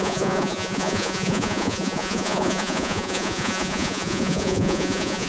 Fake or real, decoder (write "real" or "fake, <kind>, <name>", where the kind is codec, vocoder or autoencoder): fake, vocoder, Vocos